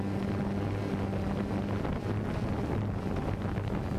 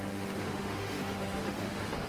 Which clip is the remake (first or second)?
second